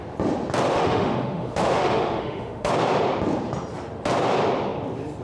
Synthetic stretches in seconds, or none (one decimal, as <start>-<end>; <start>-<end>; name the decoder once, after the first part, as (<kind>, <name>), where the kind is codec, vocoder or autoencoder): 0.7-2.7 (autoencoder, DAC-VAE)